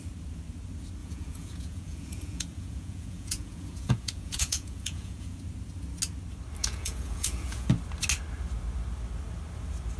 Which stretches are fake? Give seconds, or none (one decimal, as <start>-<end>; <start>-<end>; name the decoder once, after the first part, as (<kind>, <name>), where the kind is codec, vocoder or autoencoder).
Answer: 1.0-5.4 (vocoder, Vocos); 6.6-7.7